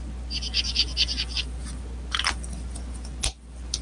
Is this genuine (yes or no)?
yes